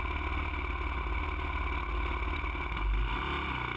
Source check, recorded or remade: recorded